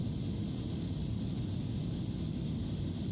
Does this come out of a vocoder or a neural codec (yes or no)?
no